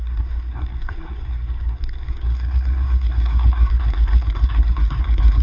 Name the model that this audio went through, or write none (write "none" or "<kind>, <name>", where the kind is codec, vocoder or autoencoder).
codec, SNAC